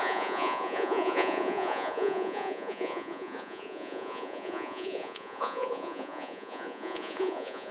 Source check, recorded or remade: remade